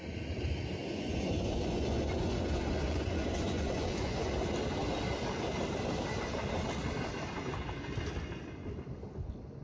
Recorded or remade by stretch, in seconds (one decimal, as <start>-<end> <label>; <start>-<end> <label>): 0.0-0.8 recorded; 0.8-4.3 remade; 4.3-9.6 recorded